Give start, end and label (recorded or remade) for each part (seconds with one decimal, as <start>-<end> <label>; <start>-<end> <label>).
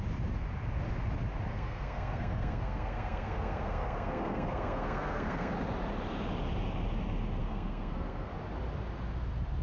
0.0-1.5 recorded; 1.5-5.5 remade; 5.5-7.4 recorded; 7.4-8.3 remade; 8.3-9.6 recorded